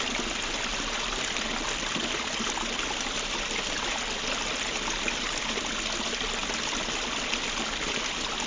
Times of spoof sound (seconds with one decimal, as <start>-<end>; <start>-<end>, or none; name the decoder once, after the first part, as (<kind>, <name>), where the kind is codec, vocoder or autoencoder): none